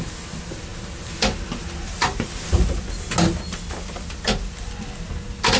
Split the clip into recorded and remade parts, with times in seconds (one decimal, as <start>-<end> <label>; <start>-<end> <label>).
0.0-5.6 recorded